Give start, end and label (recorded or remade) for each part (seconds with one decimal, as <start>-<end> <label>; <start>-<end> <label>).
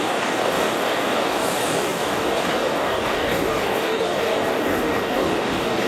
0.0-5.9 remade